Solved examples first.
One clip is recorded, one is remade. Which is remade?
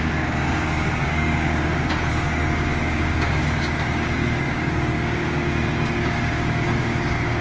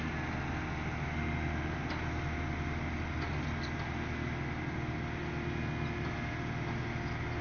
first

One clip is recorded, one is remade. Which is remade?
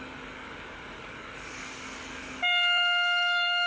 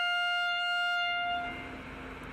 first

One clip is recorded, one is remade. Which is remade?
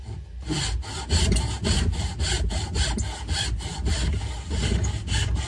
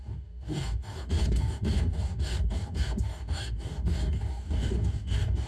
second